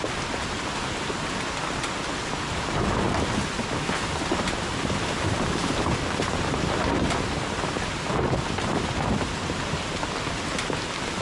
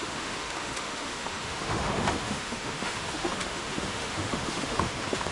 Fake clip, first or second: second